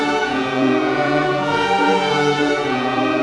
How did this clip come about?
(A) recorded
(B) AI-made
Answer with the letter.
B